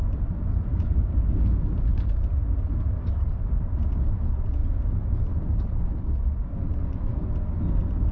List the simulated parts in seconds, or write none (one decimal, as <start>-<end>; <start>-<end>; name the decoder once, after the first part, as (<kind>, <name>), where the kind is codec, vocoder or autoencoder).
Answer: 4.6-5.3 (vocoder, BigVGAN v2)

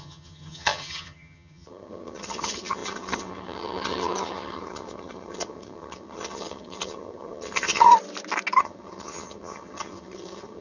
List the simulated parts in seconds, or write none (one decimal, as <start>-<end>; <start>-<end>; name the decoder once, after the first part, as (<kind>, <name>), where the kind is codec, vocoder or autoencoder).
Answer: 0.0-7.9 (vocoder, HiFi-GAN); 8.6-10.6

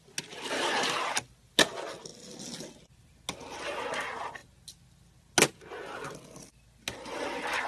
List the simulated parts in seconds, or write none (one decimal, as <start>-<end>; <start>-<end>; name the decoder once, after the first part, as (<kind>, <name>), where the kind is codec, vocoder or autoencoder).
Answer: none